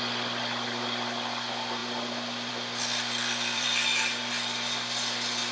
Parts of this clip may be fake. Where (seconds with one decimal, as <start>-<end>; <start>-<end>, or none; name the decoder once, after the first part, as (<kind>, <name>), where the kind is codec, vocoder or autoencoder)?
3.2-4.3 (vocoder, BigVGAN v2)